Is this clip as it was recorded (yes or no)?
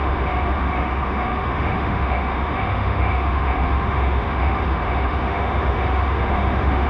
no